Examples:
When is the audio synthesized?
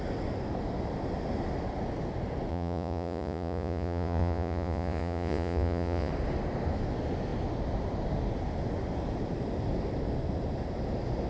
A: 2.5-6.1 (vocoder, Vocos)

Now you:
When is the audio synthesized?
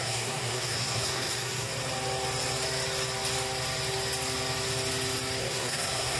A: 0.0-1.7 (codec, SNAC); 5.4-6.2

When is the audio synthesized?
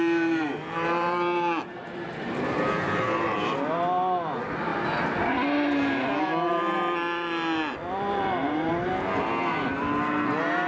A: 0.0-4.7 (vocoder, BigVGAN v2); 6.2-8.7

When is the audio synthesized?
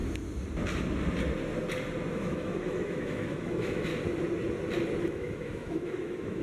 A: 2.1-3.9 (autoencoder, DAC-VAE); 5.0-6.4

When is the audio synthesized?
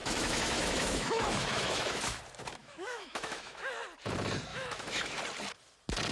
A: 0.0-2.2 (autoencoder, DAC-VAE); 2.6-3.7; 4.5-5.2